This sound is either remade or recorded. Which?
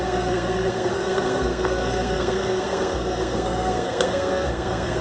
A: remade